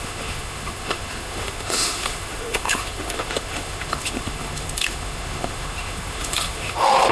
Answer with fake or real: fake